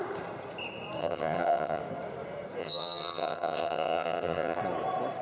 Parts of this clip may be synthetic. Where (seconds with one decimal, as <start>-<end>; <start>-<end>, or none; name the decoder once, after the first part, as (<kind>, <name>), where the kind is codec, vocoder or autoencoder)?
1.0-1.8 (vocoder, HiFi-GAN); 2.6-4.6